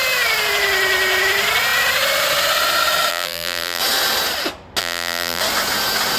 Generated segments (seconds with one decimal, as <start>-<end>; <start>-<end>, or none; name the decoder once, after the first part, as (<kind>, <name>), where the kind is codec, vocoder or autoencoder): 3.1-3.8 (vocoder, BigVGAN v2); 4.8-5.4